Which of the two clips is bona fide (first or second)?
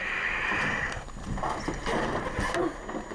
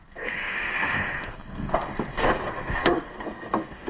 first